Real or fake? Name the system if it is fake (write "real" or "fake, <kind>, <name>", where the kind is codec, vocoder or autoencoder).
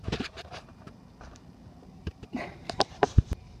fake, vocoder, BigVGAN v2